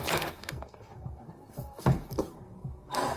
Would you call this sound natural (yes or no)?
no